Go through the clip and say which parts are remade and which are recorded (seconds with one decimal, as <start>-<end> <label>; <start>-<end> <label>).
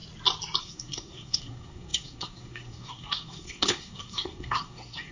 0.0-0.6 recorded; 0.6-5.1 remade